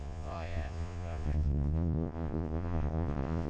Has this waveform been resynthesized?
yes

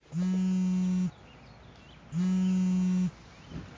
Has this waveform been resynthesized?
no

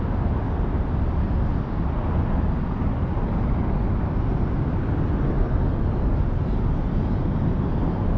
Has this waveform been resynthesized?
no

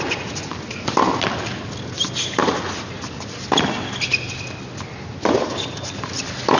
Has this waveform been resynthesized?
no